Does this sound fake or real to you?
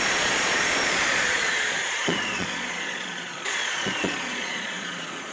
fake